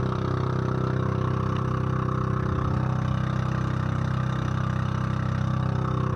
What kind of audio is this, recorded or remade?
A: recorded